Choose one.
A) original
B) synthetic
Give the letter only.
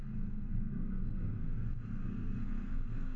B